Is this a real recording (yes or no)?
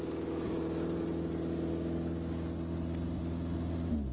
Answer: yes